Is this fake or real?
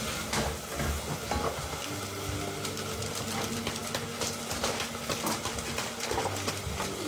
real